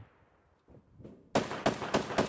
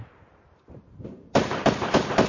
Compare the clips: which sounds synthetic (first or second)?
second